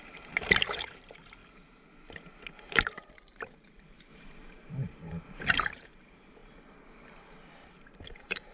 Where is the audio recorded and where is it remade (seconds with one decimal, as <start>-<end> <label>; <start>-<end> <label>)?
0.0-1.4 remade; 1.4-2.7 recorded; 2.7-6.4 remade; 6.4-7.5 recorded; 7.5-8.5 remade